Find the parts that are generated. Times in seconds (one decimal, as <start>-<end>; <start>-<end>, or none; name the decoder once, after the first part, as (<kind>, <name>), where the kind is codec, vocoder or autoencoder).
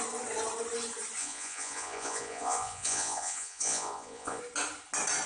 1.2-4.4 (vocoder, Vocos)